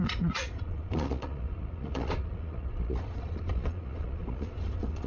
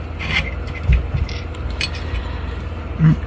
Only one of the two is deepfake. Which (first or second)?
first